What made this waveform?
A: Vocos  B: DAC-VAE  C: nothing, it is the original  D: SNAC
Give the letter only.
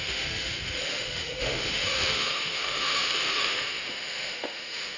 B